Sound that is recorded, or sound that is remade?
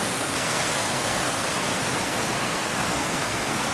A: remade